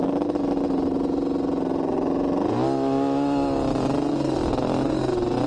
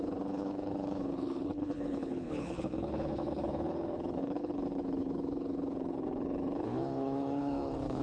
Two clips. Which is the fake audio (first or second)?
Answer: second